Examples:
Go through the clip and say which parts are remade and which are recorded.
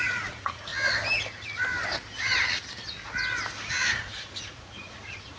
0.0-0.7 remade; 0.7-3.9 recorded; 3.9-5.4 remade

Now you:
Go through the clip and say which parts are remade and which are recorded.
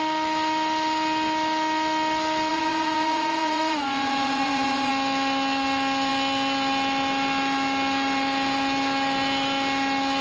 0.0-2.5 recorded; 2.5-4.9 remade; 4.9-10.2 recorded